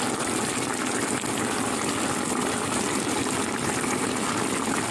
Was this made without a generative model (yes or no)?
yes